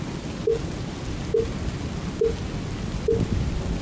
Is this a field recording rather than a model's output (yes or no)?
yes